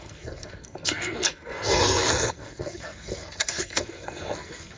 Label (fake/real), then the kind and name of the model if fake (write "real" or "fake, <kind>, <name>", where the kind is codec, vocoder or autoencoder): fake, codec, SNAC